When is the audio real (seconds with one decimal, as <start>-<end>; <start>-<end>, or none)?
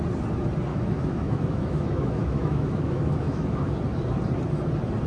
0.0-0.7; 3.8-5.1